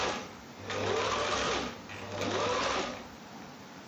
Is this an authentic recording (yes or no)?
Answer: yes